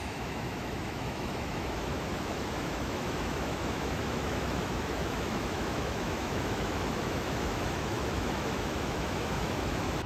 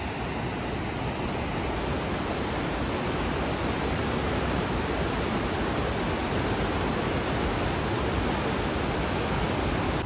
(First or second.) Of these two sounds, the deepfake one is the first